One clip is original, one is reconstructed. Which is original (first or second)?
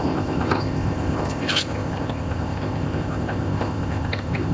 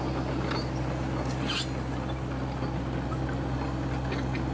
second